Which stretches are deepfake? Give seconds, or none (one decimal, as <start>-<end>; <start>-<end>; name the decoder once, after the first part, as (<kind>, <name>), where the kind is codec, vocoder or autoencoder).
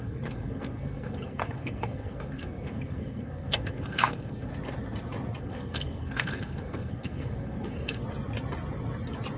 0.0-4.5 (codec, SNAC); 5.4-8.0